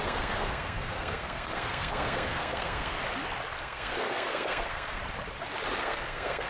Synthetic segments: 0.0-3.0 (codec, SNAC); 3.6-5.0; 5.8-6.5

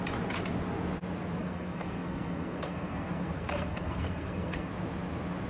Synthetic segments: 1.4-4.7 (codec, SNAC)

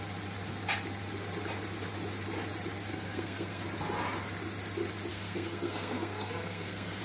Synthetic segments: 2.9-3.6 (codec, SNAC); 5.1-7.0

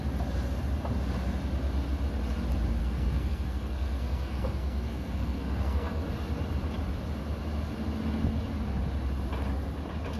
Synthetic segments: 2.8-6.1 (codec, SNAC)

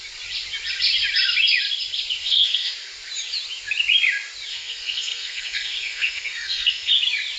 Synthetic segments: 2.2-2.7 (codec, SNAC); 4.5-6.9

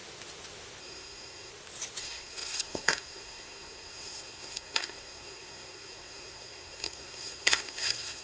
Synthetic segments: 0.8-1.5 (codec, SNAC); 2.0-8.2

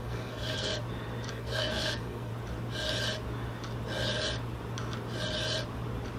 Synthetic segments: 0.0-0.7 (codec, SNAC); 1.3-2.3